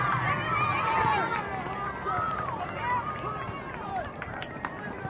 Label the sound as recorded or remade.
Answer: recorded